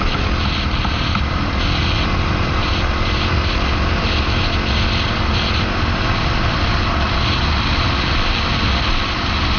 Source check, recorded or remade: recorded